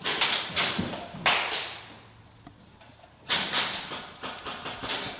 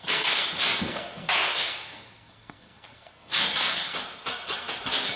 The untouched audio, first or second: first